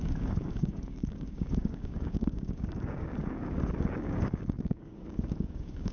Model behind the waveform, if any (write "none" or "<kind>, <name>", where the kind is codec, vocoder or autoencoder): codec, DAC